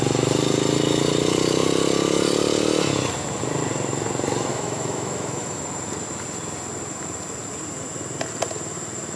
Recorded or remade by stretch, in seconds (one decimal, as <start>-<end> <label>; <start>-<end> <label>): 0.0-4.5 recorded; 4.5-5.6 remade; 5.6-9.2 recorded